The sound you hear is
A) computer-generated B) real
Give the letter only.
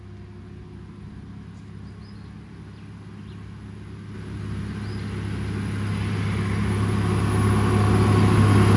B